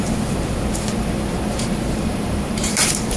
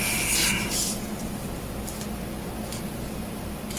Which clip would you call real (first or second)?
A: second